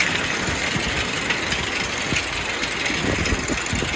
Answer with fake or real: real